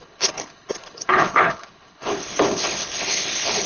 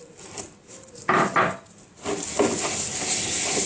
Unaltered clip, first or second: second